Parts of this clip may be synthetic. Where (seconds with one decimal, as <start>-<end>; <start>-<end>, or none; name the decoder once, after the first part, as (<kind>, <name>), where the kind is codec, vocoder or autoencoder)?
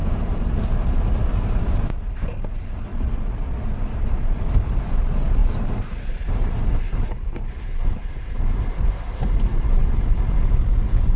0.0-1.6 (vocoder, BigVGAN v2); 5.4-9.9